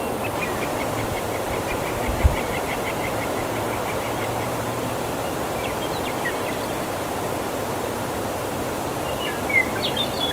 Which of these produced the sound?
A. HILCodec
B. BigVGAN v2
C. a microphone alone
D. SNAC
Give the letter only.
B